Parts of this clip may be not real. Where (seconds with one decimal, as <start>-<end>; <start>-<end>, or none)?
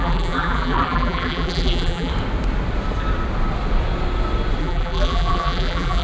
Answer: 0.0-2.1; 4.6-6.0